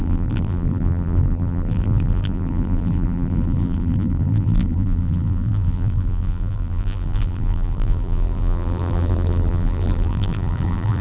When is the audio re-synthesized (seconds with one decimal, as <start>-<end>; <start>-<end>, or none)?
0.0-11.0